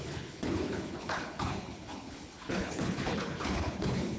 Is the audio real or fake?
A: fake